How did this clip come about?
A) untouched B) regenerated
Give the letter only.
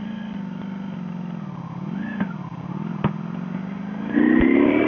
A